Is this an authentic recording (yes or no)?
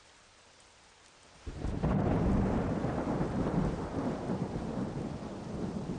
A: yes